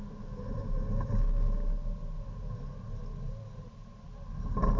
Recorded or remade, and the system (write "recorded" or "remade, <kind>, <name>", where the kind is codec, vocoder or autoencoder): recorded